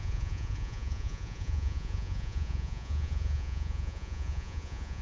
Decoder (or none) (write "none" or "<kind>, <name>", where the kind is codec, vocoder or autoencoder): vocoder, Vocos